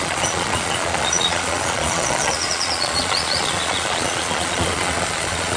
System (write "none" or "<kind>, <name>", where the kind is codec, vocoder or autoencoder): vocoder, Vocos